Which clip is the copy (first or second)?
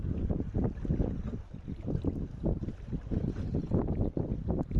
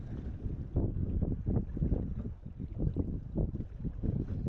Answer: first